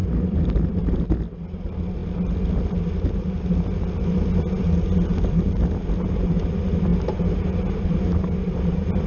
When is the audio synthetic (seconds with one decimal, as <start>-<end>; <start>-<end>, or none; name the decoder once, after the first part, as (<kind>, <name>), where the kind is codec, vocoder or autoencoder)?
0.0-0.7 (vocoder, BigVGAN v2); 6.9-9.1